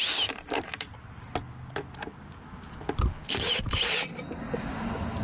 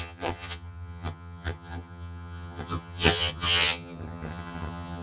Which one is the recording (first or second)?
first